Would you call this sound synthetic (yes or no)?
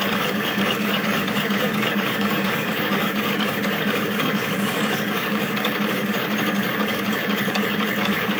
yes